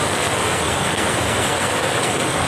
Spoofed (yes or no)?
yes